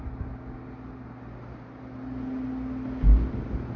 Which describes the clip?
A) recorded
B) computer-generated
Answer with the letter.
A